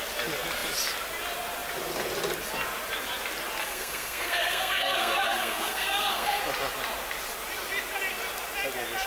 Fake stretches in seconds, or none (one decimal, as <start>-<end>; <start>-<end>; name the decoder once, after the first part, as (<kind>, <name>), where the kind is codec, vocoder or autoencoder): 3.6-6.4 (codec, SNAC)